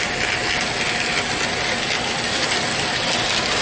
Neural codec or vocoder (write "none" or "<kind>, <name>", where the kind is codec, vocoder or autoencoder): none